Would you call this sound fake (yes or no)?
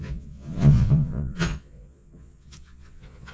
yes